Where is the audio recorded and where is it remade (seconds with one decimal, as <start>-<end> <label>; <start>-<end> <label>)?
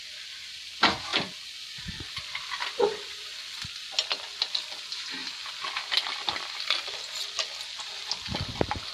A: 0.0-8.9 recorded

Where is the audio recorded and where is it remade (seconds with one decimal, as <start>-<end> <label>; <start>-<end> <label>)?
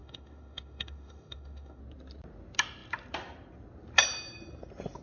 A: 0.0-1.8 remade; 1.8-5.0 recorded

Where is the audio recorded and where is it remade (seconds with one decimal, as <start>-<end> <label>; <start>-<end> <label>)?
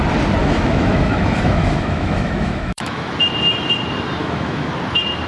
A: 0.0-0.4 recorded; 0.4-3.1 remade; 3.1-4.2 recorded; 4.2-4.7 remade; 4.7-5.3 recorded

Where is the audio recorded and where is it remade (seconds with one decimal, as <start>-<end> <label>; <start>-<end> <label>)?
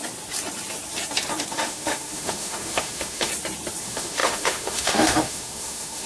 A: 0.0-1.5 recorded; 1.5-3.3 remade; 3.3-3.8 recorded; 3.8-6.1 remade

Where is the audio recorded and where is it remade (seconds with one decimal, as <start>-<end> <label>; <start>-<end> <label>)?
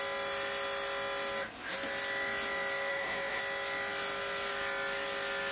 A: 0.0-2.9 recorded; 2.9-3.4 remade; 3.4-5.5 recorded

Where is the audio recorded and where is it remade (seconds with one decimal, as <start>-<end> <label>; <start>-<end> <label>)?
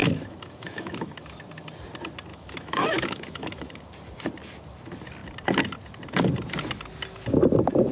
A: 0.0-1.4 remade; 1.4-2.3 recorded; 2.3-3.8 remade; 3.8-7.9 recorded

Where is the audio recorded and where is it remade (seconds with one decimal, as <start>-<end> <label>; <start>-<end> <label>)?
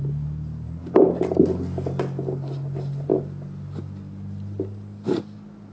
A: 0.0-5.7 recorded